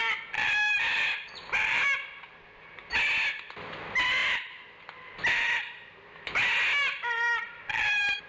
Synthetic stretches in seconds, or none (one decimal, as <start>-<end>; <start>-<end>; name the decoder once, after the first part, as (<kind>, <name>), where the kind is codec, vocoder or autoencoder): 0.0-2.9 (vocoder, BigVGAN v2); 4.2-5.7